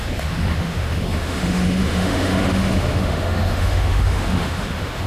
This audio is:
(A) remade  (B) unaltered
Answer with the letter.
A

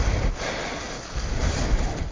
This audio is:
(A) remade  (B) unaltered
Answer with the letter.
B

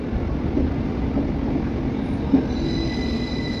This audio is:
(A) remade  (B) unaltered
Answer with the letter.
B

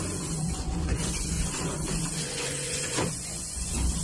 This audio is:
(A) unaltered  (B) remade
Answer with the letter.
B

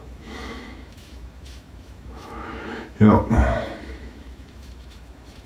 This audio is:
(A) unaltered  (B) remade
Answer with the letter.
B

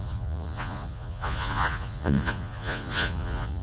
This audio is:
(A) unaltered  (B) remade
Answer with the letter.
B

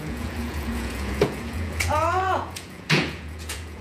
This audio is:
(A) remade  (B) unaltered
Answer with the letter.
A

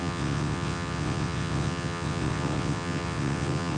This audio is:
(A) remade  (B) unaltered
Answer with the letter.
A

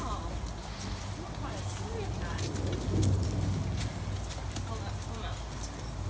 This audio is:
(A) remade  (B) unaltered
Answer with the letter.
B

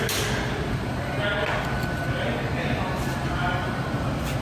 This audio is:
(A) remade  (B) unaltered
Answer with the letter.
B